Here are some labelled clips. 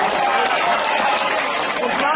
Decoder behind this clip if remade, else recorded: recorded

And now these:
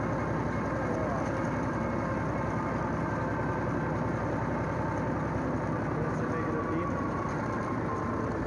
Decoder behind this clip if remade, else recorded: recorded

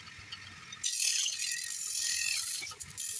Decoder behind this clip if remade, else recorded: recorded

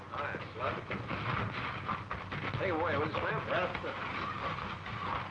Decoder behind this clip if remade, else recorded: recorded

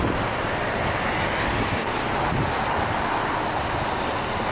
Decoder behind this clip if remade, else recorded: recorded